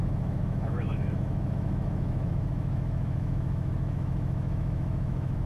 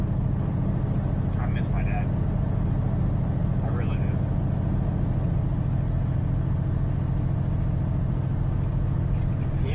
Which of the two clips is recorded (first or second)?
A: second